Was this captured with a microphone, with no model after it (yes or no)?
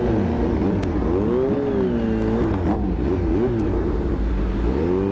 yes